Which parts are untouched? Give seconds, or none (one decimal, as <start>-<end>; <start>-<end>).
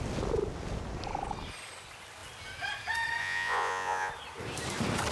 0.0-3.2; 4.1-5.1